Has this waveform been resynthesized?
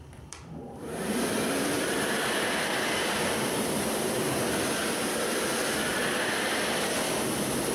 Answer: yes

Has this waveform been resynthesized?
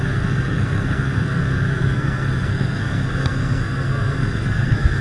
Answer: yes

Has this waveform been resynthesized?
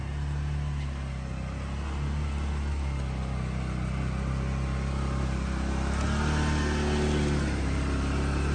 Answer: no